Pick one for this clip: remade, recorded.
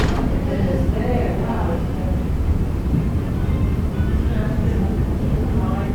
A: remade